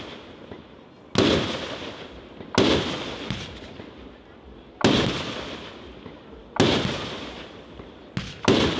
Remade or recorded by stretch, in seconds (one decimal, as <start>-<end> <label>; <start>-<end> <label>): 0.0-8.8 recorded